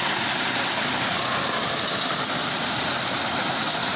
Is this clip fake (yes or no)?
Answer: no